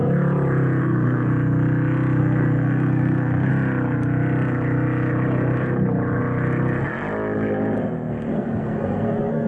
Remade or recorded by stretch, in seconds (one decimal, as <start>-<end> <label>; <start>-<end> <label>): 0.0-0.8 recorded; 0.8-1.3 remade; 1.3-2.2 recorded; 2.2-3.5 remade; 3.5-8.3 recorded; 8.3-9.5 remade

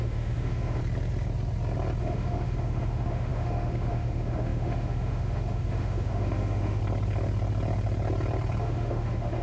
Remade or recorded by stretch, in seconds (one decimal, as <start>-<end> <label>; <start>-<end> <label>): 0.0-0.8 remade; 0.8-2.0 recorded; 2.0-6.8 remade; 6.8-8.6 recorded; 8.6-9.4 remade

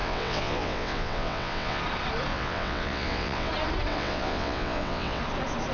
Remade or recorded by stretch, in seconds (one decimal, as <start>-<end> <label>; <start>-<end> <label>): 0.0-1.8 remade; 1.8-2.3 recorded; 2.3-3.5 remade; 3.5-3.9 recorded; 3.9-5.2 remade; 5.2-5.7 recorded

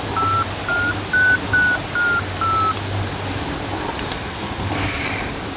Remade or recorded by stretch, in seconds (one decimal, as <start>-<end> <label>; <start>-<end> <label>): 0.0-4.1 recorded; 4.1-5.0 remade; 5.0-5.6 recorded

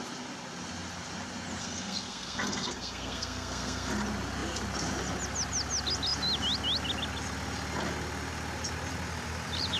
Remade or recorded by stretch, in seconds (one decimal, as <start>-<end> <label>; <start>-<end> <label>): 0.0-1.6 recorded; 1.6-3.9 remade; 3.9-9.8 recorded

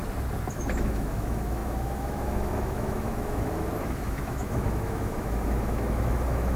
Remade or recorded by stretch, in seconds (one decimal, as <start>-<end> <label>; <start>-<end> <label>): 0.0-0.5 recorded; 0.5-6.6 remade

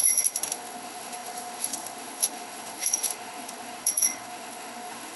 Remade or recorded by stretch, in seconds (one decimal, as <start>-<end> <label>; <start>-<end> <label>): 0.0-5.2 remade

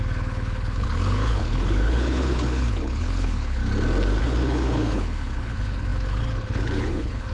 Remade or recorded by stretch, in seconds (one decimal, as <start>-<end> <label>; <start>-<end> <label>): 0.0-3.6 remade; 3.6-4.2 recorded; 4.2-7.3 remade